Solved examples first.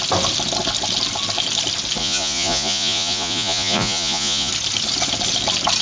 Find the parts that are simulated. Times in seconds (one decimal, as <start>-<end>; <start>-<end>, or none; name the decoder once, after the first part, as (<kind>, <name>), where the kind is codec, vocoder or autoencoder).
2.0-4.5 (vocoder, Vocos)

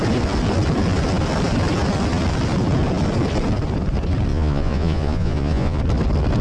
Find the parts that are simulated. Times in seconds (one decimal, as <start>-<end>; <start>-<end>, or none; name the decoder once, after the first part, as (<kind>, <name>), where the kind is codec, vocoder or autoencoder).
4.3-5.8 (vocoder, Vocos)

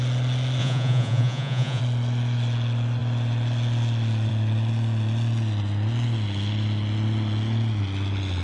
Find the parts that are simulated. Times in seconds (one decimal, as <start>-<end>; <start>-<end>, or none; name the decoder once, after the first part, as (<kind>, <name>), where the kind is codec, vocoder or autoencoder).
0.6-1.8 (vocoder, Vocos)

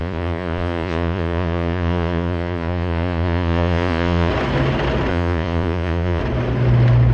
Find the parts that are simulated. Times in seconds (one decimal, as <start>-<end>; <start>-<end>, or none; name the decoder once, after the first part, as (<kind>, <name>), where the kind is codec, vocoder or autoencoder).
0.0-4.3 (vocoder, Vocos); 5.1-6.2

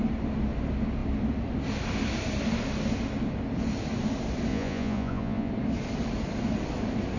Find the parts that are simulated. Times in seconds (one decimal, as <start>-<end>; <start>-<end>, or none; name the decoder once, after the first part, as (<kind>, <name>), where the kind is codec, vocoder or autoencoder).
4.5-5.5 (vocoder, Vocos)